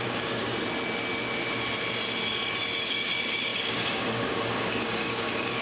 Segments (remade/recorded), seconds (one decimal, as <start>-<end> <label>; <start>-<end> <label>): 0.0-0.5 remade; 0.5-2.8 recorded; 2.8-5.6 remade